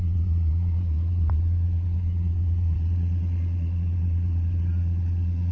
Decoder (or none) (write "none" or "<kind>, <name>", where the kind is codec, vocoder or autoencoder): vocoder, Vocos